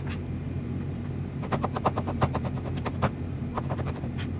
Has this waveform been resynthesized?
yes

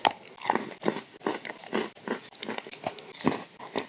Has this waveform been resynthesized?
no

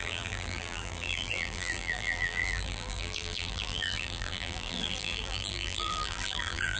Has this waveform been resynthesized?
yes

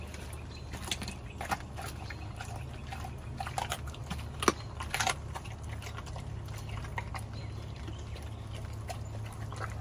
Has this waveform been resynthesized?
no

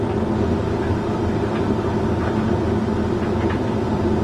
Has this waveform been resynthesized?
no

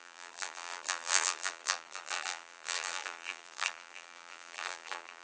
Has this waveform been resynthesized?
yes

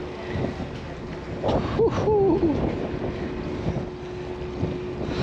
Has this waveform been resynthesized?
no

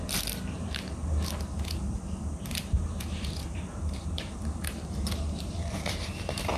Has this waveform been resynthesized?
yes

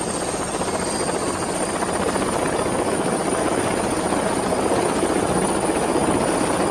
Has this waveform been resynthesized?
no